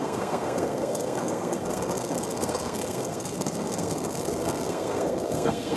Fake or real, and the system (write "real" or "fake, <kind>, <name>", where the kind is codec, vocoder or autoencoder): fake, codec, SNAC